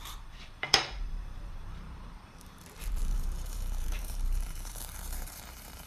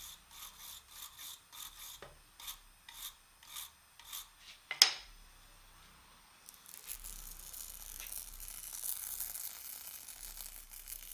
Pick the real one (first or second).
second